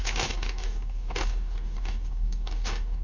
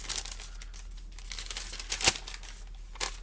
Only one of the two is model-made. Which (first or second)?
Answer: first